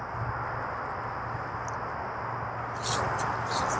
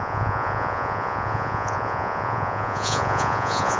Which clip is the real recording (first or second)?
first